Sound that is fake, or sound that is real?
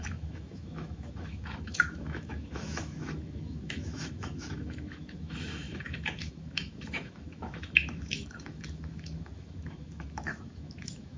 fake